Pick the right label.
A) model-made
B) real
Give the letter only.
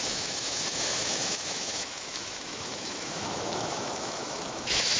A